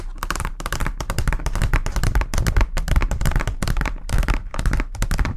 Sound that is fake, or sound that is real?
real